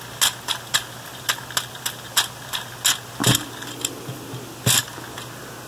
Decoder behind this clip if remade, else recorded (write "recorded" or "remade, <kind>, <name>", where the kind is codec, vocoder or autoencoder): recorded